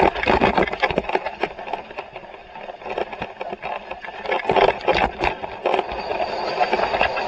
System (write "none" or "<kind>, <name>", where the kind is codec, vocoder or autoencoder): none